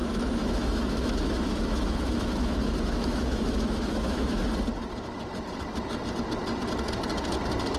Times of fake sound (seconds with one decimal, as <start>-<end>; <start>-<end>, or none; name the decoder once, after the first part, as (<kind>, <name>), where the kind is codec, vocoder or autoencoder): 0.0-4.4 (autoencoder, DAC-VAE)